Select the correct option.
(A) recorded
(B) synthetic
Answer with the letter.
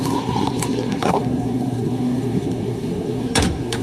B